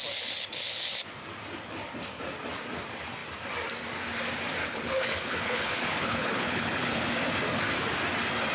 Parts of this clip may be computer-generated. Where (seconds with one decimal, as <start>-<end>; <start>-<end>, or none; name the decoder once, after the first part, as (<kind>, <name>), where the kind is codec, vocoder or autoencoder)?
4.6-7.0 (codec, HILCodec)